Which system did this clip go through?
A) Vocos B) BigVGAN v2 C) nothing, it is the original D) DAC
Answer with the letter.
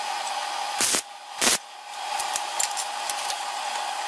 C